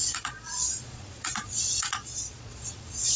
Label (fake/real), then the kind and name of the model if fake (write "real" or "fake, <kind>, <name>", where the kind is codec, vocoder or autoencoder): fake, vocoder, Vocos